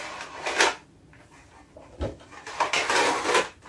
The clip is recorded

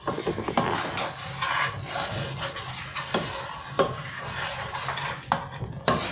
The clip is recorded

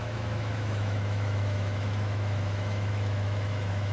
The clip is remade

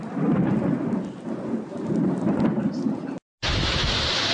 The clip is recorded